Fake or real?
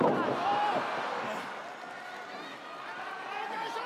real